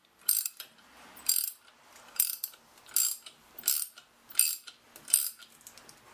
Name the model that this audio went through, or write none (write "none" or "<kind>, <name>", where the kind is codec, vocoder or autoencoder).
none